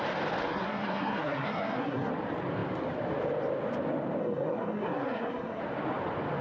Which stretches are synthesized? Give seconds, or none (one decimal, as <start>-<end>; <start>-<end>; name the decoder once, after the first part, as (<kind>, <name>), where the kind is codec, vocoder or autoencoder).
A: 0.4-2.1 (codec, SNAC); 4.2-5.6